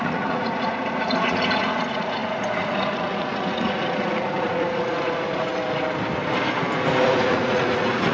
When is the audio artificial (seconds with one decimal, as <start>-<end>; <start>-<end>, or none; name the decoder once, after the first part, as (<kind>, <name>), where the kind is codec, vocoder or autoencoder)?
0.0-5.5 (vocoder, Vocos); 7.1-8.1